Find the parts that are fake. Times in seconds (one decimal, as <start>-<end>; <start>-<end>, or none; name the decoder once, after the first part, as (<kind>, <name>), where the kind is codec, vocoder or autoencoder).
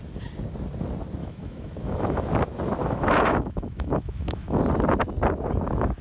1.2-2.3 (autoencoder, DAC-VAE); 2.8-4.6